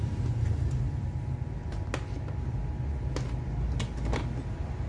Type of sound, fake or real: real